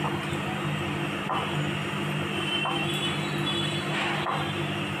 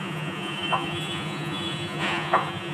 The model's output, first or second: second